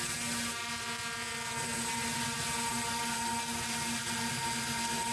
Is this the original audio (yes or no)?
yes